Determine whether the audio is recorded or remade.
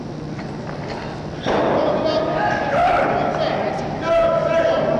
recorded